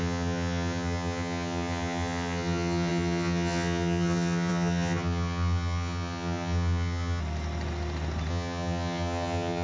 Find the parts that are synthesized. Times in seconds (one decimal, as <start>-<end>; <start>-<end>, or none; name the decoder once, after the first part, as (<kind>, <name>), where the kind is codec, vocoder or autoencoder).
0.0-7.2 (vocoder, HiFi-GAN); 8.3-9.6